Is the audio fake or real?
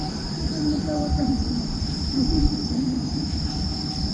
real